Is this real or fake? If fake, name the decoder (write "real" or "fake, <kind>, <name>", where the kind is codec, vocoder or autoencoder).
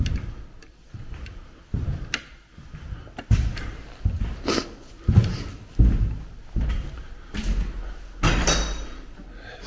real